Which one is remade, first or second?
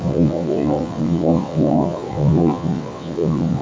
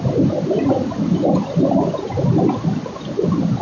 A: first